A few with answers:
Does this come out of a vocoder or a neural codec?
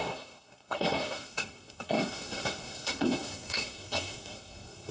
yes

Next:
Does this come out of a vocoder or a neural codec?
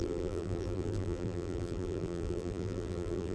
yes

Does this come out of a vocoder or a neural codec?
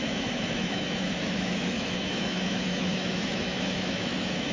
yes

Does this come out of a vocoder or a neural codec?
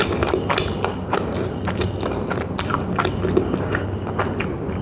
no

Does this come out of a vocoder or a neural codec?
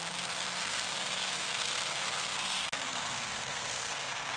yes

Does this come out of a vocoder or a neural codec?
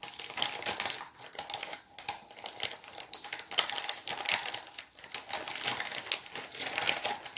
no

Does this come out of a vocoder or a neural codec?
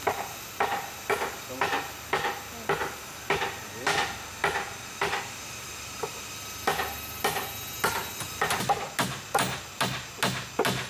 no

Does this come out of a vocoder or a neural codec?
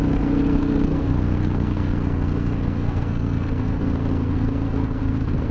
yes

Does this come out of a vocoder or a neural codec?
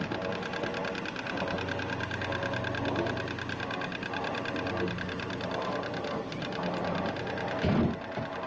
no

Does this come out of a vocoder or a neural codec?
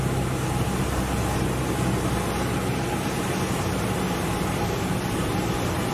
no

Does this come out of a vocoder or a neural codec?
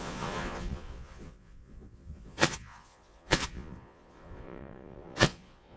yes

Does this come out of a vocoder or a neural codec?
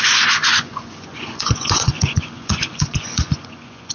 yes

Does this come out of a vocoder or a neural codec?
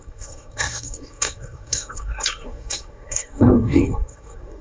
yes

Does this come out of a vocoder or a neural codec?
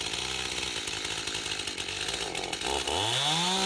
no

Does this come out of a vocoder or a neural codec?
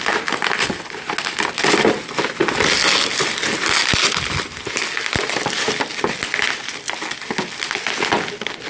no